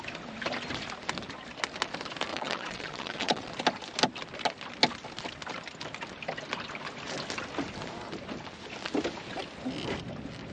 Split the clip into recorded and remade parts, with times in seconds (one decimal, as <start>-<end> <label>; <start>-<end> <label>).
0.0-2.3 recorded; 2.3-3.5 remade; 3.5-10.5 recorded